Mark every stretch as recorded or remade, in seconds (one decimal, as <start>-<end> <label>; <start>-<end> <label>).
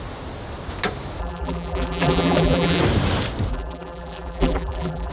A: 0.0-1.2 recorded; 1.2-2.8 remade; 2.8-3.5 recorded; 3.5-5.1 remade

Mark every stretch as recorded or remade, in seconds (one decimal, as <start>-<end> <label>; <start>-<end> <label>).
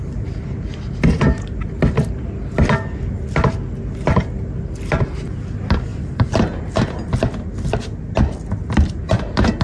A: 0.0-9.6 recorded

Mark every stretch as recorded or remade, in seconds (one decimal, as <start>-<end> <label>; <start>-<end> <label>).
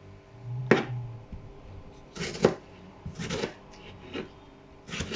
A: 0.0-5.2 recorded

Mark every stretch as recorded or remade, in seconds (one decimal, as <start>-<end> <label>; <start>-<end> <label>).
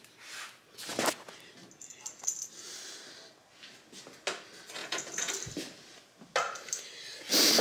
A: 0.0-4.8 recorded; 4.8-5.3 remade; 5.3-7.6 recorded